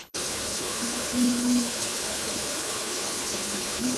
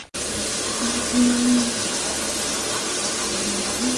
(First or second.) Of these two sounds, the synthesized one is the first